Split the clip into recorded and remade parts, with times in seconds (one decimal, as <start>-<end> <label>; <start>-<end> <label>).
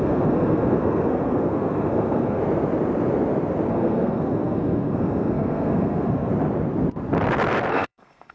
0.0-2.4 remade; 2.4-3.7 recorded; 3.7-6.3 remade; 6.3-7.7 recorded; 7.7-8.3 remade